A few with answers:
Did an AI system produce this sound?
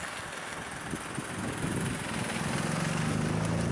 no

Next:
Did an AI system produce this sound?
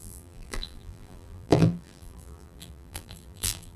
yes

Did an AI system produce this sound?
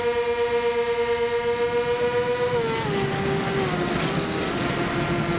no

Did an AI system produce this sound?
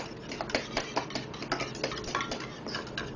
no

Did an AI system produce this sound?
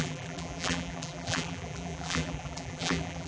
yes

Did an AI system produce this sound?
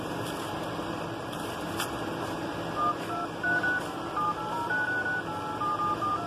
yes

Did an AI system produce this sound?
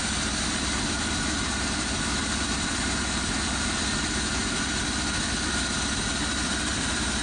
yes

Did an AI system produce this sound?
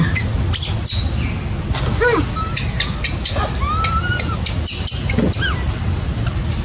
no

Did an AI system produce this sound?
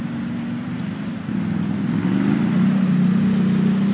no